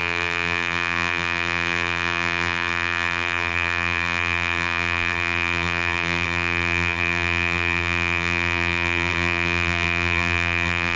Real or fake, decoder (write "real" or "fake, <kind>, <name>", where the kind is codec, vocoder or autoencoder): fake, vocoder, BigVGAN v2